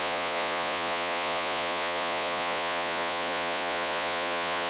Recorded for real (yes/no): no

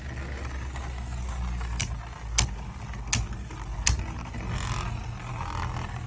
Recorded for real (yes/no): yes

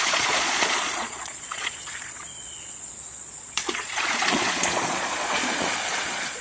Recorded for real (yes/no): no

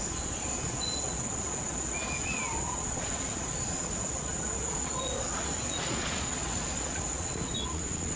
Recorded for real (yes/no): no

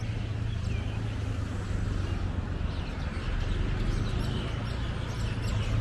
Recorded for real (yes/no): yes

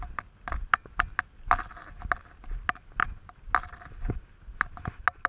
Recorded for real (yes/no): yes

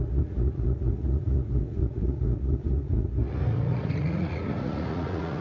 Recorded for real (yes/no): no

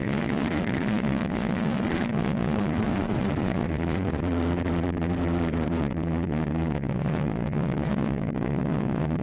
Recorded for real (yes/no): no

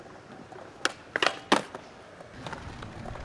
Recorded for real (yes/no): yes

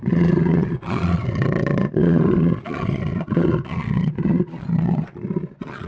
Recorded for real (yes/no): no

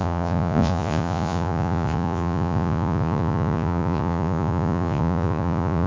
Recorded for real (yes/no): no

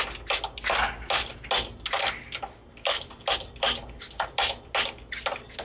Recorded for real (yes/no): yes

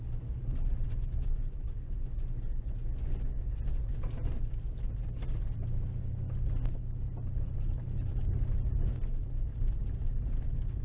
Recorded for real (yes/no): yes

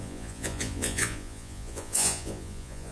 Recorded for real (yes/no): no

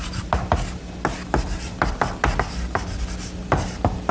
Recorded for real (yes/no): yes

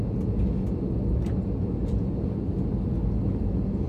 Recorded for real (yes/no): yes